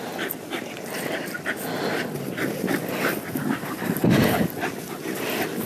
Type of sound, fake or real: real